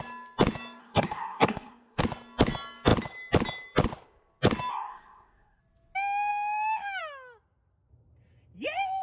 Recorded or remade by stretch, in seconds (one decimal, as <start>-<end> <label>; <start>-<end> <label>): 0.0-0.8 recorded; 0.8-2.0 remade; 2.0-4.7 recorded; 4.7-5.6 remade; 5.6-9.0 recorded